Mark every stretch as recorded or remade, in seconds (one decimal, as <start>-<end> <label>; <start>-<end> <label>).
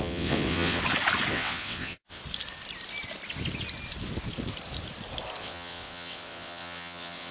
0.0-0.8 remade; 0.8-1.3 recorded; 1.3-2.2 remade; 2.2-5.4 recorded; 5.4-7.3 remade